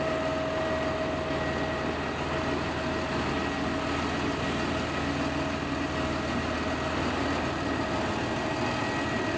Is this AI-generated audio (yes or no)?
no